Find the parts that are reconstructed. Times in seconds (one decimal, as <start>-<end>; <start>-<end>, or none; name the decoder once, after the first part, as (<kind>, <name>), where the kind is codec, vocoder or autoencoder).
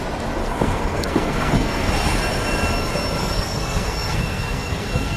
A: 0.4-1.9 (codec, SNAC); 3.2-5.2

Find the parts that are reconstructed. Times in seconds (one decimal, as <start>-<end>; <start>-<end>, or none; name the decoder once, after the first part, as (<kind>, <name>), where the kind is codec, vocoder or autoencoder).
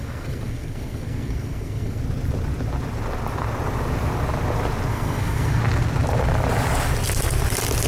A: 0.0-2.0 (codec, SNAC); 4.9-5.6